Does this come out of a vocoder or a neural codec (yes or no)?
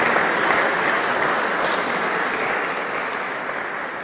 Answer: no